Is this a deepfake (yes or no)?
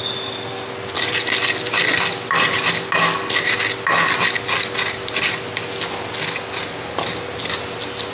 no